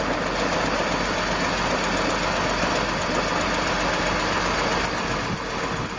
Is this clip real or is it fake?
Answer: real